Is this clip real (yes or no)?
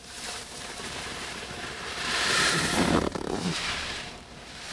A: no